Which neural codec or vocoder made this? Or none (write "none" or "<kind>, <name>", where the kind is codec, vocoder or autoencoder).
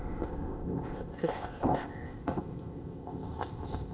codec, ZipCodec